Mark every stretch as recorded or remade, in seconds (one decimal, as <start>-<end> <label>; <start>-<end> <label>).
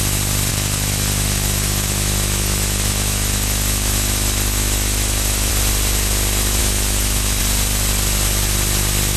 0.0-0.5 recorded; 0.5-5.5 remade; 5.5-6.6 recorded; 6.6-7.4 remade; 7.4-9.2 recorded